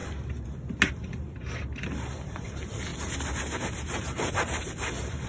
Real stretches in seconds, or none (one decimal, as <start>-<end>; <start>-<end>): 0.0-0.9; 2.9-3.6